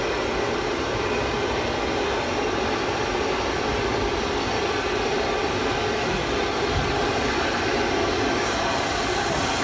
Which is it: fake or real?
real